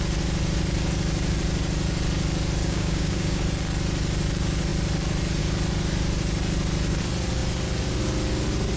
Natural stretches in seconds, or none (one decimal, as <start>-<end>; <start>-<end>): 0.0-2.6; 3.4-8.8